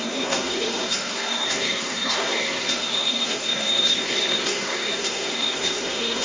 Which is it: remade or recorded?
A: remade